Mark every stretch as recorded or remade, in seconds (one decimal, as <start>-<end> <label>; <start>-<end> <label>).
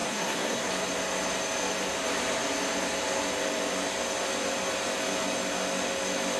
0.0-0.7 remade; 0.7-6.4 recorded